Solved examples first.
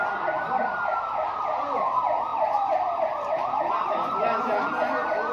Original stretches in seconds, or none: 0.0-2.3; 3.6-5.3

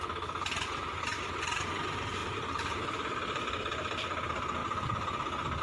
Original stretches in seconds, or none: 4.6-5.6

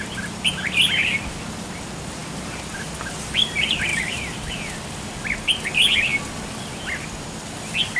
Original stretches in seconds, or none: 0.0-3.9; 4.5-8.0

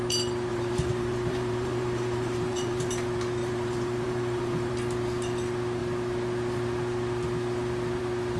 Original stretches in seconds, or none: 0.0-0.5; 2.9-3.4; 4.7-8.4

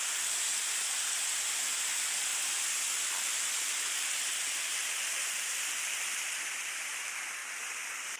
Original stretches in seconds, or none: 2.3-5.5; 7.4-8.2

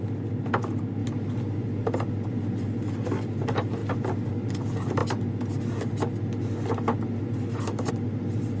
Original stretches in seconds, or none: 0.0-8.6

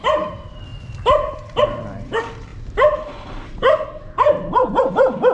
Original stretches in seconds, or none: 2.5-4.8